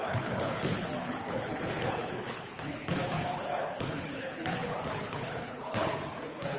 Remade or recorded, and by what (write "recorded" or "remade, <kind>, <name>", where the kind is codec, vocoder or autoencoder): remade, codec, HILCodec